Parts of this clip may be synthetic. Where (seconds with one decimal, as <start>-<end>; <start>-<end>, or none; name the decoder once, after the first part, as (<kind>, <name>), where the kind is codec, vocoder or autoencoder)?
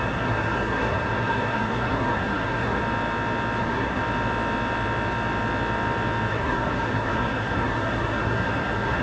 0.0-2.8 (codec, SNAC); 3.6-4.0; 6.3-9.0